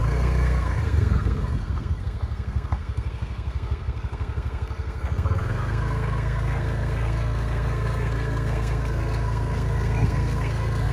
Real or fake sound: fake